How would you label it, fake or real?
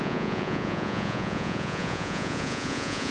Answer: fake